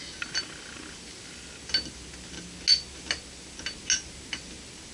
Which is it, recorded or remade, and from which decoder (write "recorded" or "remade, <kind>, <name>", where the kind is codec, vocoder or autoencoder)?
recorded